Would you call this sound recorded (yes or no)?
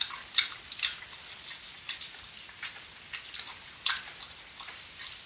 yes